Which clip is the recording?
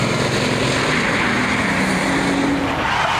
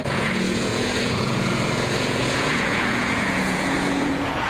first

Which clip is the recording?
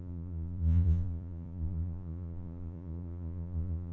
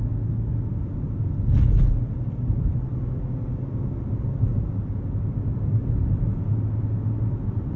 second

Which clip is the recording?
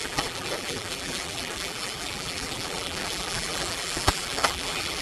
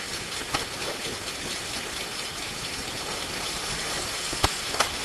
second